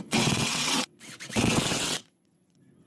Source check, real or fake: fake